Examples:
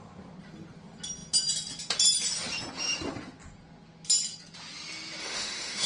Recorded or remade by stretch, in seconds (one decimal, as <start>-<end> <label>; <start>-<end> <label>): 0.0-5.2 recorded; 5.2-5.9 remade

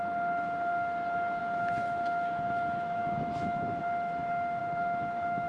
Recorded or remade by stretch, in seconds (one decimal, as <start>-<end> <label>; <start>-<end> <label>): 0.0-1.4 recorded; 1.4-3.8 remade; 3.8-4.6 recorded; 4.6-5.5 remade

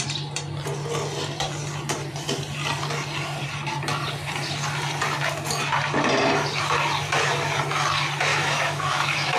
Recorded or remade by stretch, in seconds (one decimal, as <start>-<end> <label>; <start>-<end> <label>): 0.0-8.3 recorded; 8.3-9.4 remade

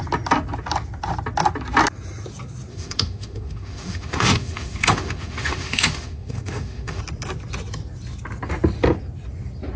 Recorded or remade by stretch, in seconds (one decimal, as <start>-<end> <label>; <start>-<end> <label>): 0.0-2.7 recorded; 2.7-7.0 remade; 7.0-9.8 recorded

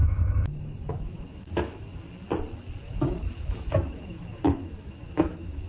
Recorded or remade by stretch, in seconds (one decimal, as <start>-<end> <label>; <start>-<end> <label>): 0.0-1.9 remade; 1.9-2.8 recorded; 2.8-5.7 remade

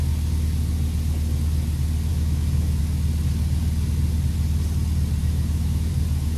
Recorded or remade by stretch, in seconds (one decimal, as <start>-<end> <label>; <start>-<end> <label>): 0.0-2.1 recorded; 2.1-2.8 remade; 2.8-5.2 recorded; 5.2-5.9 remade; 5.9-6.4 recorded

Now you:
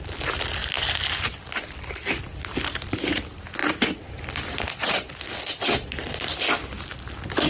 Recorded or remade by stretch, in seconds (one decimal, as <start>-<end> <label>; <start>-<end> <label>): 0.0-7.5 recorded

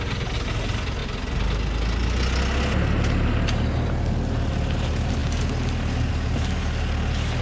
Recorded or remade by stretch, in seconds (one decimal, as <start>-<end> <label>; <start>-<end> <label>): 0.0-7.4 recorded